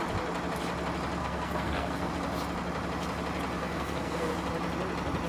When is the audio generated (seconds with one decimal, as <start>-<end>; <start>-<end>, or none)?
1.2-2.1; 3.6-4.3